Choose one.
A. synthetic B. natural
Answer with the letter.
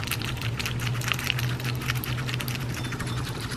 B